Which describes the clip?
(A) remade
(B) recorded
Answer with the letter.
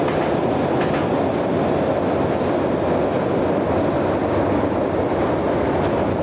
B